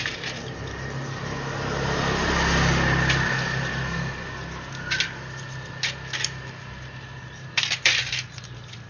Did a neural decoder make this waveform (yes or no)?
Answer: no